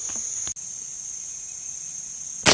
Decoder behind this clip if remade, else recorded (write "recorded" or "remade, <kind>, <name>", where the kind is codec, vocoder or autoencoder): recorded